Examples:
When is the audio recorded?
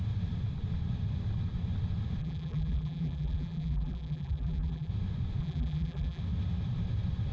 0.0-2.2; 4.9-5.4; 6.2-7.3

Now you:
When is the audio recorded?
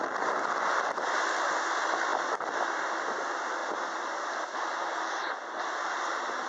0.0-6.5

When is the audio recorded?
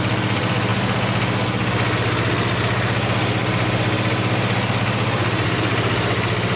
0.7-4.7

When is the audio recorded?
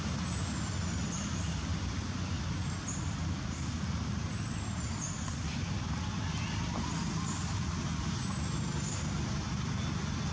0.0-1.7; 6.1-10.3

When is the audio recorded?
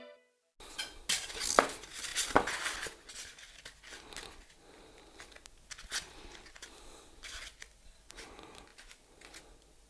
0.0-9.9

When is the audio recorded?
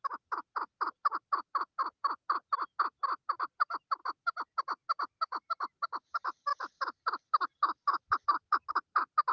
1.8-3.2; 4.0-5.4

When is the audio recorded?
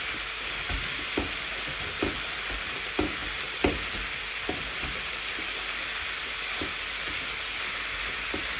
0.0-8.6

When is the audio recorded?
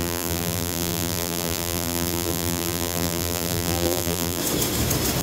4.4-5.2